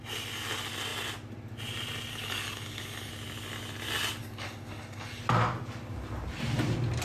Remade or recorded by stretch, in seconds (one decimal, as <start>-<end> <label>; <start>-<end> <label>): 0.0-2.1 recorded; 2.1-3.1 remade; 3.1-4.2 recorded; 4.2-5.2 remade; 5.2-7.0 recorded

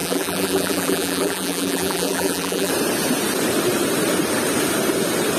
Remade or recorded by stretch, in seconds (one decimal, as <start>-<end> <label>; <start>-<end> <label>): 0.0-2.7 remade; 2.7-5.4 recorded

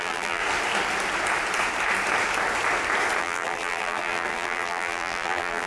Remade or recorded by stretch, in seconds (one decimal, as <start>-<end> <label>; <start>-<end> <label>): 0.0-0.4 remade; 0.4-3.2 recorded; 3.2-5.7 remade